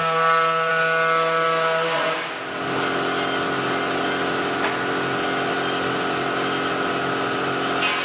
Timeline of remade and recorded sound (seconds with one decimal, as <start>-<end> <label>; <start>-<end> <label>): 0.0-0.7 remade; 0.7-8.0 recorded